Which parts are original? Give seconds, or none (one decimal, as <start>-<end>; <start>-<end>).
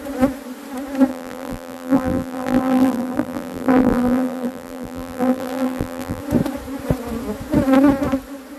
0.0-1.1; 6.2-8.6